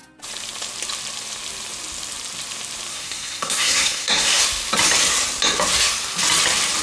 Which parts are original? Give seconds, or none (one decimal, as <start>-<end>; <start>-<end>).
0.0-2.9; 4.4-6.8